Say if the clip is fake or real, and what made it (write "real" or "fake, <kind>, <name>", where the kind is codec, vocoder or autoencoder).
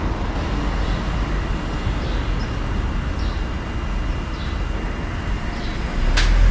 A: real